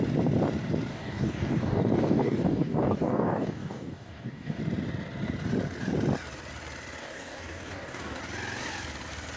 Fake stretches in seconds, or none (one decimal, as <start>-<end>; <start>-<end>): 0.9-4.6; 7.0-8.2